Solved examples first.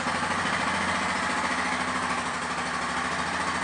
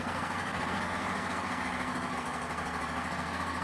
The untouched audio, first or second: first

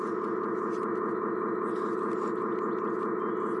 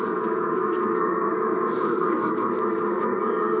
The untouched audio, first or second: first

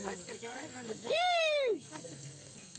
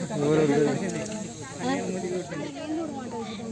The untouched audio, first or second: second